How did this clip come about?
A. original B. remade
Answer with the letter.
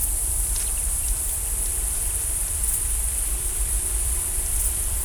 B